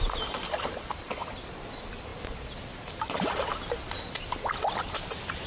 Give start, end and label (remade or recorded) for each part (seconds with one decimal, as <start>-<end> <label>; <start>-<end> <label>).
0.0-5.5 recorded

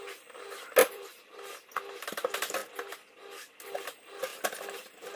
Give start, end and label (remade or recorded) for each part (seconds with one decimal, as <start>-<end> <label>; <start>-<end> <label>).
0.0-0.8 recorded; 0.8-1.7 remade; 1.7-5.2 recorded

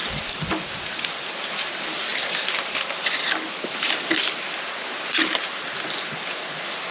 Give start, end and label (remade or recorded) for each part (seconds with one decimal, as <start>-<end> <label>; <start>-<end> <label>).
0.0-1.4 remade; 1.4-6.9 recorded